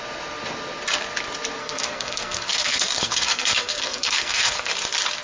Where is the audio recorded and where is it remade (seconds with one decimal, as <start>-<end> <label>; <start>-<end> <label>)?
0.0-1.6 recorded; 1.6-4.7 remade; 4.7-5.2 recorded